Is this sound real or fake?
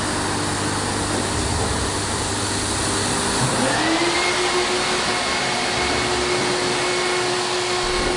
real